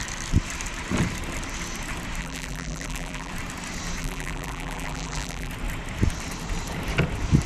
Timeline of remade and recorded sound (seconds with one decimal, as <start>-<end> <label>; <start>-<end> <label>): 0.0-2.2 recorded; 2.2-3.3 remade; 3.3-4.0 recorded; 4.0-5.5 remade; 5.5-7.5 recorded